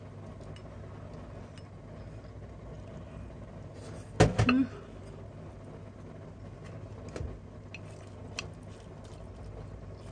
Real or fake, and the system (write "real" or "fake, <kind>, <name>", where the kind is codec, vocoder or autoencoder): real